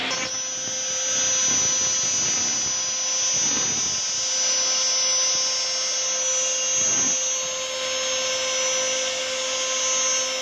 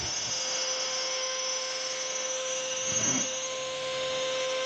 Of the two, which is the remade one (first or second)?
second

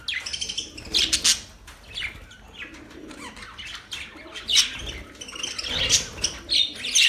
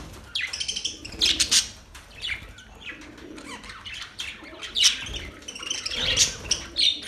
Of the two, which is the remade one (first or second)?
second